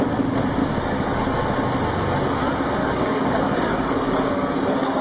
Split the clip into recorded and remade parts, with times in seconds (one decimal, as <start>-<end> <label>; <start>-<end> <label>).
0.0-0.6 recorded; 0.6-1.2 remade; 1.2-2.8 recorded; 2.8-5.0 remade